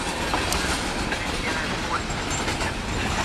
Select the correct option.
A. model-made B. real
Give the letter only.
B